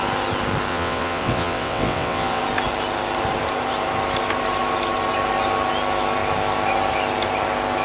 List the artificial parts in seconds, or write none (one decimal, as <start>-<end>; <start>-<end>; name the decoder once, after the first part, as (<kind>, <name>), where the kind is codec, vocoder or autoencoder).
0.7-2.4 (vocoder, WaveNeXt)